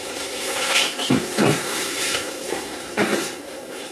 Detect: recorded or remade remade